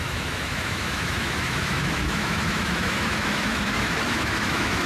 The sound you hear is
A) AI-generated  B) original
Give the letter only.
A